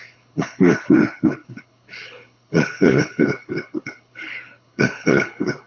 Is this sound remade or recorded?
remade